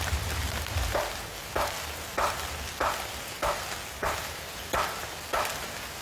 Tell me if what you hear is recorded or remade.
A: recorded